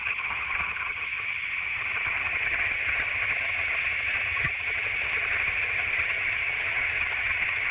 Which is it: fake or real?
fake